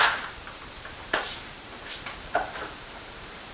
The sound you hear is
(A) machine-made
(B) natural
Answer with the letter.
A